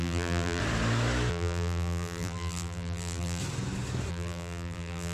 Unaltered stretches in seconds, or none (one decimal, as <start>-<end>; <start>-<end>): 0.6-1.3; 3.4-4.1